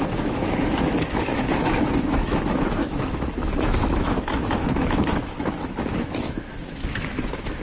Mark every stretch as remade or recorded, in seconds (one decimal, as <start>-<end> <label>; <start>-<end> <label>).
0.0-7.6 remade

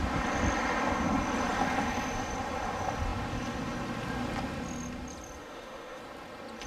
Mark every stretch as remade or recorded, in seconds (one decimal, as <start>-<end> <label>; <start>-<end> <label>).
0.0-5.4 recorded; 5.4-6.0 remade; 6.0-6.7 recorded